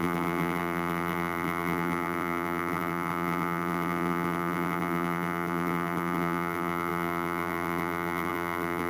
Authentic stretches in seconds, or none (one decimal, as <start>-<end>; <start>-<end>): none